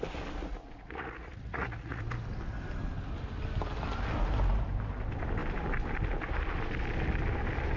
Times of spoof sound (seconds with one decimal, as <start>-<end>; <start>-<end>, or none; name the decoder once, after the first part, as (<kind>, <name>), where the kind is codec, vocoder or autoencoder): 0.4-2.0 (vocoder, Vocos)